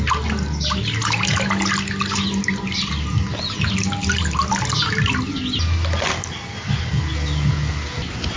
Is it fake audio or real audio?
real